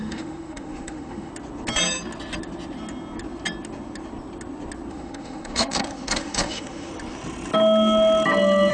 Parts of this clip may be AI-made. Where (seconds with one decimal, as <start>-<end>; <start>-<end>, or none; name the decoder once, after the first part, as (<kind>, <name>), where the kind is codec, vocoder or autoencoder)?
0.0-1.3 (autoencoder, DAC-VAE); 4.9-6.9